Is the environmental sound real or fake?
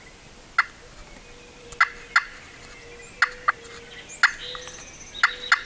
real